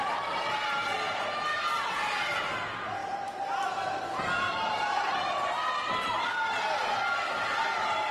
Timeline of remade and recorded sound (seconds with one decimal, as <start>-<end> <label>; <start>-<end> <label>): 0.0-1.5 recorded; 1.5-2.4 remade; 2.4-8.1 recorded